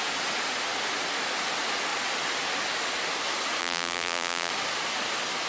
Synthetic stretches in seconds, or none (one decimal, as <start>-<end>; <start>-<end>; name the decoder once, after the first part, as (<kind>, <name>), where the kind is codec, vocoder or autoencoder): 3.6-4.5 (vocoder, BigVGAN v2)